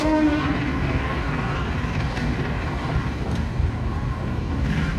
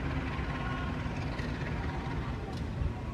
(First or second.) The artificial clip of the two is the first